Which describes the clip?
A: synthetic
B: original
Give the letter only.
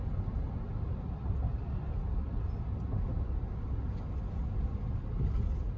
B